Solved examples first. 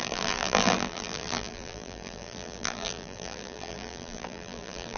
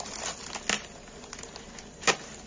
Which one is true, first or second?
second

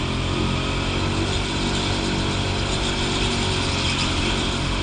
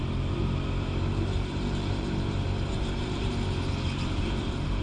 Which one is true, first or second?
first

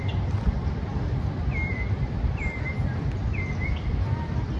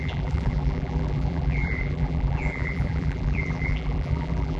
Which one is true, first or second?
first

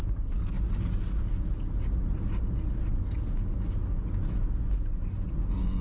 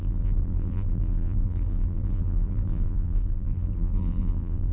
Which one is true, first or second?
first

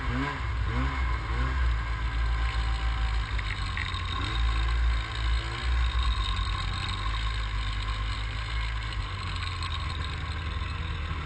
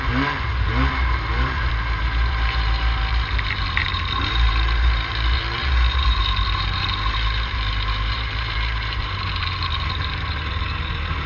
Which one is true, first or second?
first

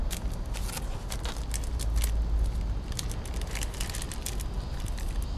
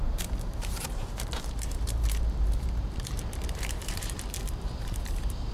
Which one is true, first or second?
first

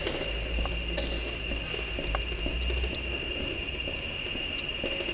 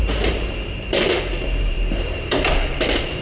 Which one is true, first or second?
first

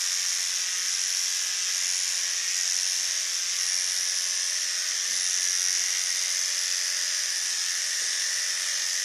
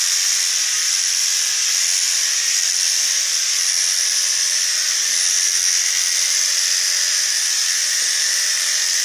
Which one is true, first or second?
first